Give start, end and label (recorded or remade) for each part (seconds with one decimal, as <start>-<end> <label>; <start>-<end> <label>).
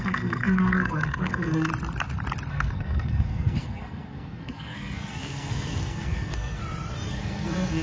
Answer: 0.0-1.7 remade; 1.7-2.5 recorded; 2.5-6.6 remade; 6.6-7.1 recorded; 7.1-7.8 remade